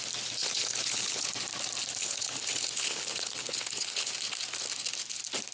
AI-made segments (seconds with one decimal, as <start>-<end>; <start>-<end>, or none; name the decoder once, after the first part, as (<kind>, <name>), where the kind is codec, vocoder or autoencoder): 0.4-1.3 (codec, HILCodec); 2.0-4.1